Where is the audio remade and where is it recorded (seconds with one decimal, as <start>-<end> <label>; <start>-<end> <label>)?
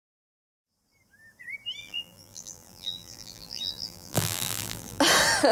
0.0-1.8 recorded; 1.8-5.0 remade; 5.0-5.5 recorded